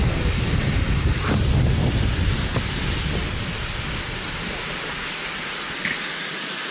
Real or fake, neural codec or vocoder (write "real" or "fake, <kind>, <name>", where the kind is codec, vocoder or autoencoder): real